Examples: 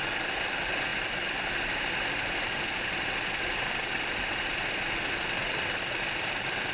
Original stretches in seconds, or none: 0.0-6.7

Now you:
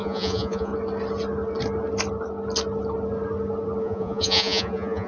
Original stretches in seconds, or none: 0.7-3.8

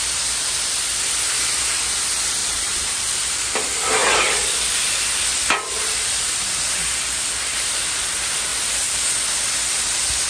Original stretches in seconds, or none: 0.0-2.4; 3.1-10.3

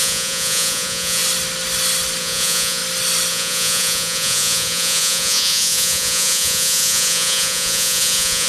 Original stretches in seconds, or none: 1.2-2.2; 2.8-3.3